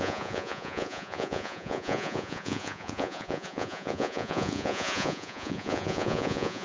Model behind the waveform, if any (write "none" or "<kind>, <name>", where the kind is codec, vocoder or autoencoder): vocoder, Vocos